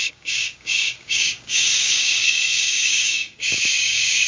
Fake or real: fake